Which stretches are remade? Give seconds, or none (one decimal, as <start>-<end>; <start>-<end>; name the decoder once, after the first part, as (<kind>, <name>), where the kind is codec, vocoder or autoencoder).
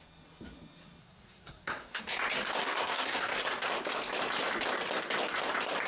1.0-2.0 (codec, SNAC); 2.6-3.3